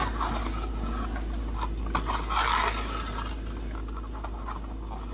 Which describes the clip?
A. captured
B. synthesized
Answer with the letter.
A